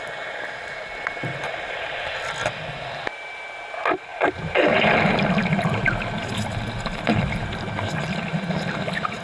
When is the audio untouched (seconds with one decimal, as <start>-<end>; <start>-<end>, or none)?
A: 0.0-4.1; 4.7-9.2